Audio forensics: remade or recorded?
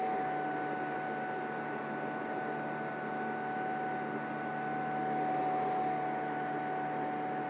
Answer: recorded